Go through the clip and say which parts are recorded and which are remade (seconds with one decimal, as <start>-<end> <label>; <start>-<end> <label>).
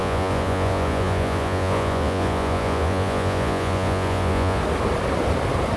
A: 0.0-4.6 remade; 4.6-5.8 recorded